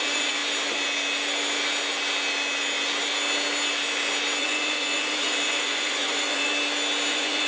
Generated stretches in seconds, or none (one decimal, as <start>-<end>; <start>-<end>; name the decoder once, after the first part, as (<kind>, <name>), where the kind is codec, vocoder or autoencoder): 0.0-0.4 (vocoder, Vocos); 4.4-6.5; 7.1-7.5